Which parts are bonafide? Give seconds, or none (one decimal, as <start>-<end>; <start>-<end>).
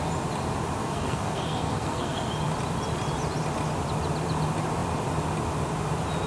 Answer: 0.0-0.8; 2.3-6.3